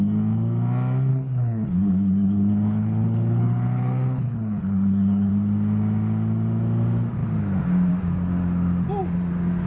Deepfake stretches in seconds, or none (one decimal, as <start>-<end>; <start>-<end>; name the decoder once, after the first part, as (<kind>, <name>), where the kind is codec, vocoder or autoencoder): 1.1-5.3 (codec, HILCodec)